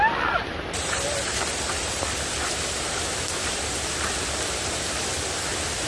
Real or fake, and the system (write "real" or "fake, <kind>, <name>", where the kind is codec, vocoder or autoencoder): real